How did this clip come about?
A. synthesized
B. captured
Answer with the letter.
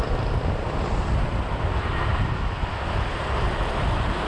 B